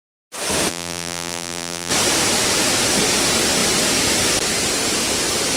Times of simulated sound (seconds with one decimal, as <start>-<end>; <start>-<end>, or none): 0.7-1.9